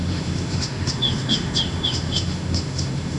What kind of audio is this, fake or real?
fake